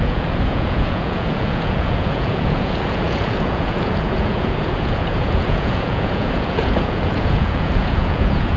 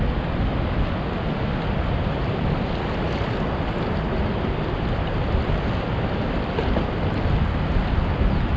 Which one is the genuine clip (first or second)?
second